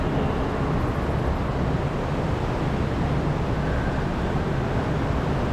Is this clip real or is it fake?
real